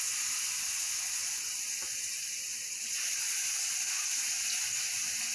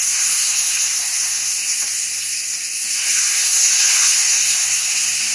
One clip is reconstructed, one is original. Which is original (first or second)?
first